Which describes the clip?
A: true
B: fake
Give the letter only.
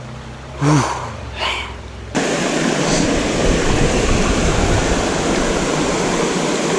A